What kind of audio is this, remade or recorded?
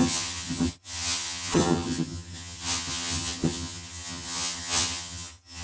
remade